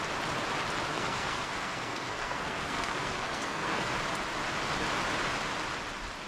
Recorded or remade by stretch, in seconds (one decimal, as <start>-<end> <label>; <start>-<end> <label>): 0.0-0.9 recorded; 0.9-3.9 remade; 3.9-6.3 recorded